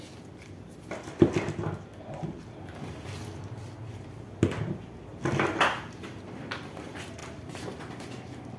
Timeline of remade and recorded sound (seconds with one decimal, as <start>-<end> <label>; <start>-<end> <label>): 0.0-8.6 recorded